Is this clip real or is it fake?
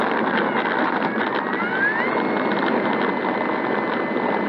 real